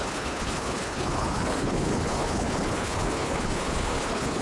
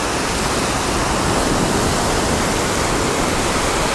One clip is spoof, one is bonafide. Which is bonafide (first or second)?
second